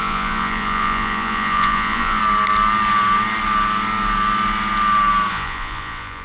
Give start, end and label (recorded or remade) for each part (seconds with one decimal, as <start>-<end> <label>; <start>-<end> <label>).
0.0-2.2 remade; 2.2-5.3 recorded; 5.3-6.2 remade